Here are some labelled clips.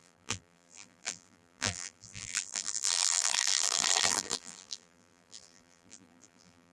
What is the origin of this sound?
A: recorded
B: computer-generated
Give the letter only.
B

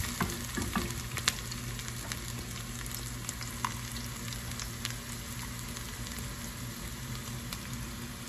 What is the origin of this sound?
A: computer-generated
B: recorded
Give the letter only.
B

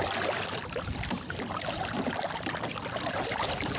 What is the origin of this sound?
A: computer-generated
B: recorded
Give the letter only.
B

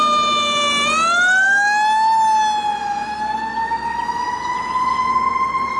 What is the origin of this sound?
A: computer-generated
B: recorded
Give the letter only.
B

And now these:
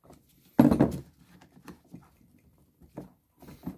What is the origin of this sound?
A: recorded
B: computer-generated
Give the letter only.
A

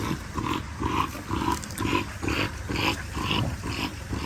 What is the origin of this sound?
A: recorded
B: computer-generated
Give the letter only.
A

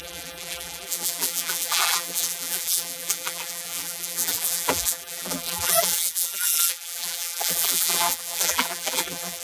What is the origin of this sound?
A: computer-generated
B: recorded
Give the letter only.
A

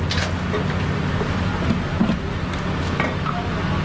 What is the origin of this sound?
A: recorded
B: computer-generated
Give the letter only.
A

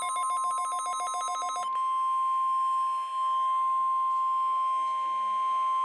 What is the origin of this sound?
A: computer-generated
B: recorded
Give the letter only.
B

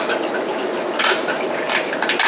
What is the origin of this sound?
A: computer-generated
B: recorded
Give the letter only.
A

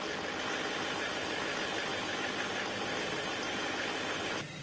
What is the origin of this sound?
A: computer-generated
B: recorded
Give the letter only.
B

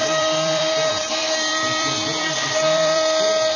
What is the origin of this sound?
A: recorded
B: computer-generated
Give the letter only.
B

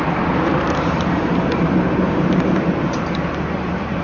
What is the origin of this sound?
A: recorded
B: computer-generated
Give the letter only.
B